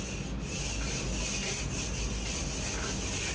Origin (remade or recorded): recorded